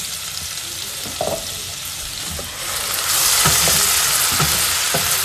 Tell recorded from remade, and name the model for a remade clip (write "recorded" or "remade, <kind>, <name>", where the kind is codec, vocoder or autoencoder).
recorded